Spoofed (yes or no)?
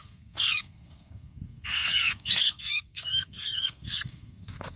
yes